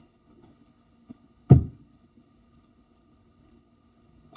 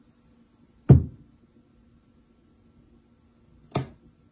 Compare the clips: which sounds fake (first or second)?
first